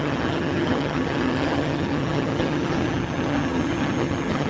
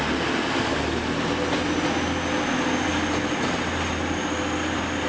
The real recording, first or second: second